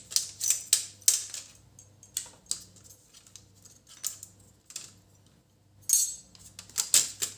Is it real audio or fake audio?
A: real